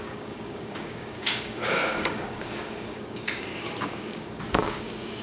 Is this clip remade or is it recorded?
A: remade